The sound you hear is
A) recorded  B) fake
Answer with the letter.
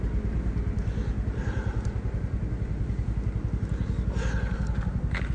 A